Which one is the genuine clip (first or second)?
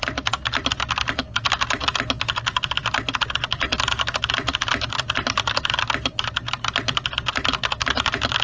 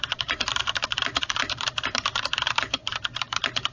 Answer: first